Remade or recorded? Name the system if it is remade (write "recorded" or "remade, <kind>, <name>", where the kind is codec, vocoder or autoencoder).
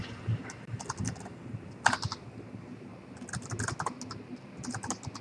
recorded